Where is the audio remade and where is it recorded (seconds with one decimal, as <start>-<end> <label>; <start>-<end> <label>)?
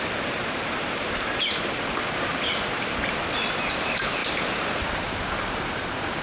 0.0-6.2 recorded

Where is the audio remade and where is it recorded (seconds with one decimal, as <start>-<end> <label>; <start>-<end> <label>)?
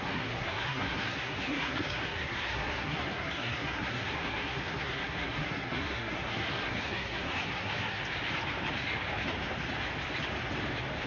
0.0-8.0 remade; 8.0-11.1 recorded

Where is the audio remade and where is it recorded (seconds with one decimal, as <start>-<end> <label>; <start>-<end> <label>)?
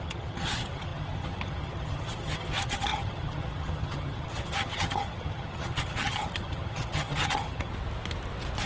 0.0-7.7 remade; 7.7-8.7 recorded